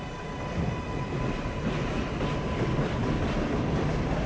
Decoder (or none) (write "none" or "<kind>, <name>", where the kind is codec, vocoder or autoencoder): none